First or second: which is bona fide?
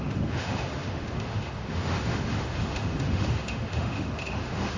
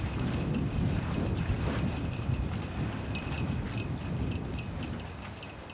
second